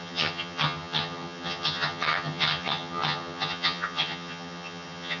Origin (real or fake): fake